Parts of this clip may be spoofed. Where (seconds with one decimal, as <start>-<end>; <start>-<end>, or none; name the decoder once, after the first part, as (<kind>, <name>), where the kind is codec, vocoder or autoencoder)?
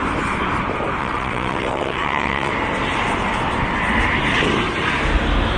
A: 1.0-2.5 (vocoder, WaveNeXt)